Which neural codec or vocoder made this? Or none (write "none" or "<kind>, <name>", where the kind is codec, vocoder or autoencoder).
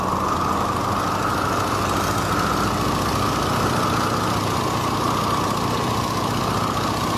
none